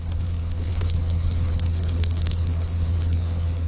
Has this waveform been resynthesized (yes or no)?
yes